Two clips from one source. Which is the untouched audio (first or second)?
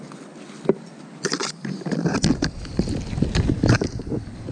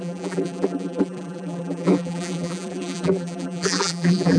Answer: first